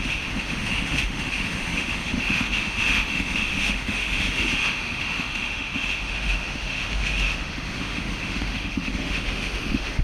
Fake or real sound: fake